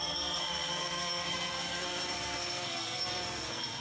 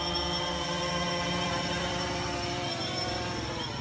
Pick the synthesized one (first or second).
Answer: first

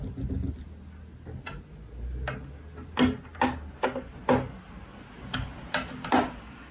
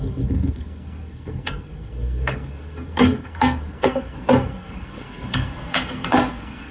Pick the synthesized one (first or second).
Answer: second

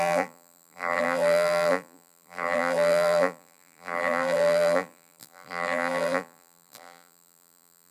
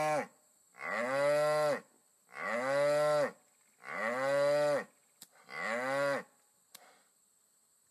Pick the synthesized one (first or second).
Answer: first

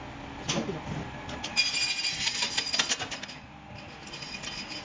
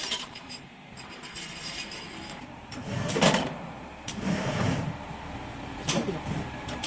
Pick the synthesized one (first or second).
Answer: second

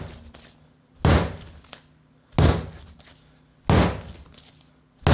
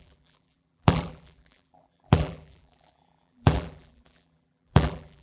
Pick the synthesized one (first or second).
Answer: second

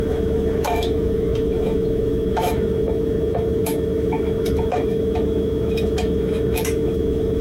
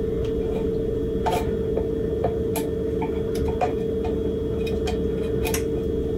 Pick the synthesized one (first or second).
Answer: first